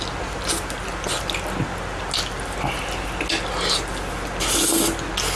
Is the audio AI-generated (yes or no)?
no